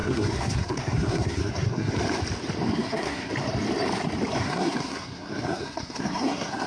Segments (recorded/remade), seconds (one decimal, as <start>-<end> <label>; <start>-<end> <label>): 0.0-1.9 remade; 1.9-2.7 recorded; 2.7-3.3 remade; 3.3-4.4 recorded; 4.4-6.7 remade